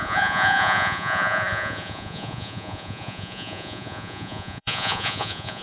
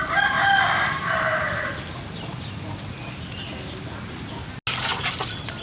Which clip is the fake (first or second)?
first